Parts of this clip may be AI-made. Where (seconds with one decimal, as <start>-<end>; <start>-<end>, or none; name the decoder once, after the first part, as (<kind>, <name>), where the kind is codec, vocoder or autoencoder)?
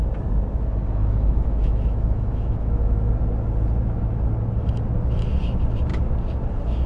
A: 1.0-3.1 (autoencoder, DAC-VAE)